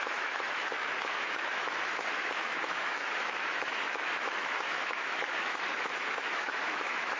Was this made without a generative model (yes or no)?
no